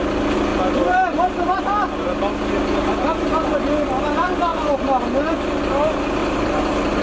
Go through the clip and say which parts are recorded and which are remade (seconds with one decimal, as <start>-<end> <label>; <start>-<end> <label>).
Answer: 0.0-0.5 recorded; 0.5-1.6 remade; 1.6-6.2 recorded; 6.2-7.0 remade